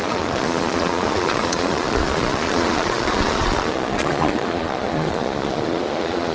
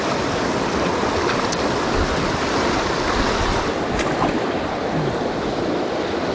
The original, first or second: second